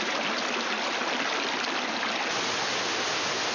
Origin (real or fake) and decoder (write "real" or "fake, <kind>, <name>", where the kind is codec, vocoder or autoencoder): real